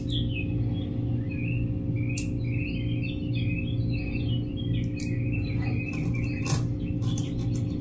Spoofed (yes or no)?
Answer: no